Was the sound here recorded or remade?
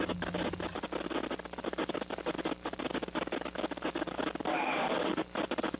recorded